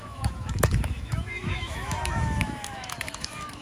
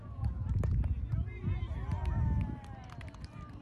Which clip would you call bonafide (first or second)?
second